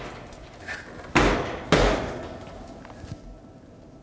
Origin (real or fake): real